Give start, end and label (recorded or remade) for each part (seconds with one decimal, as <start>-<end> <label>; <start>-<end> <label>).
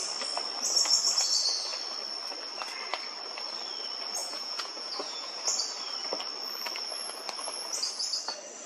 0.0-4.2 recorded; 4.2-5.4 remade; 5.4-8.7 recorded